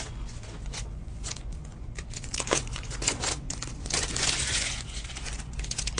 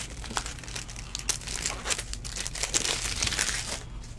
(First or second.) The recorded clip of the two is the second